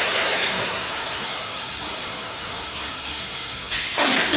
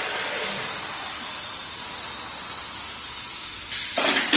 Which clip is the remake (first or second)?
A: first